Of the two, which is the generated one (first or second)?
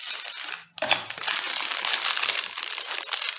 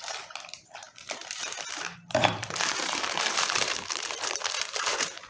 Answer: second